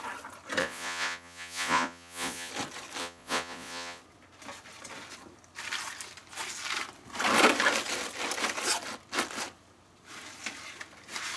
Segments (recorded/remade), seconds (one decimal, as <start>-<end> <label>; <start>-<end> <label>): 0.0-0.6 recorded; 0.6-2.5 remade; 2.5-3.0 recorded; 3.0-4.0 remade; 4.0-11.4 recorded